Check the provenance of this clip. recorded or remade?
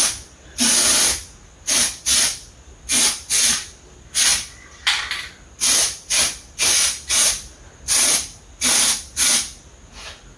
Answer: recorded